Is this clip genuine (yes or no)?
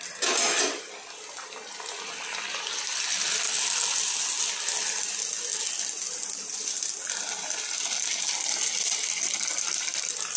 yes